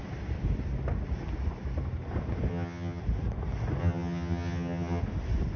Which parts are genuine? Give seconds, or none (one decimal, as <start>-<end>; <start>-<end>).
0.0-2.5; 3.0-3.8; 5.0-5.6